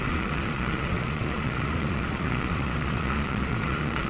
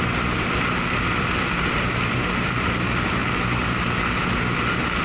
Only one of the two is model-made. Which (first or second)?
first